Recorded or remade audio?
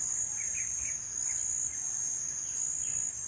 recorded